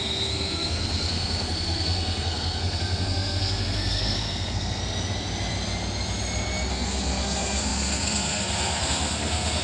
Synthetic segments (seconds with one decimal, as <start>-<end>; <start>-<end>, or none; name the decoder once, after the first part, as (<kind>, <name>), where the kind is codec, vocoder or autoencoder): 0.0-4.8 (codec, SNAC); 6.7-9.6